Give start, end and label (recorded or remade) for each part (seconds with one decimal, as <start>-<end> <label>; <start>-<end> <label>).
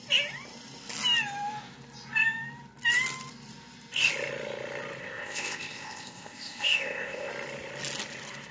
0.0-5.0 recorded; 5.0-7.3 remade; 7.3-8.5 recorded